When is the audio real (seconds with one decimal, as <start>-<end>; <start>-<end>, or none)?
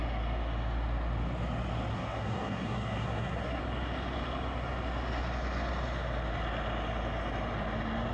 0.0-1.9; 3.6-8.1